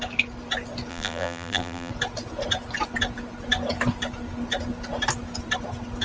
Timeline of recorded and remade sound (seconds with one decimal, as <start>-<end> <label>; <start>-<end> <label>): 0.0-0.9 recorded; 0.9-1.9 remade; 1.9-6.0 recorded